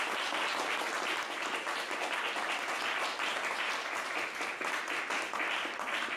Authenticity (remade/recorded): recorded